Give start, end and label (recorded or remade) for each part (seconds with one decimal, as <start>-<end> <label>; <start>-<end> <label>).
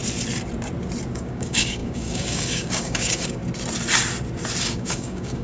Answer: 0.0-1.1 recorded; 1.1-3.4 remade; 3.4-4.6 recorded; 4.6-5.4 remade